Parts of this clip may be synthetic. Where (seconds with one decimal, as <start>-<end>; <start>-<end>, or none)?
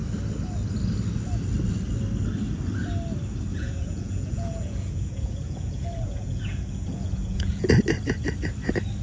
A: 3.5-7.7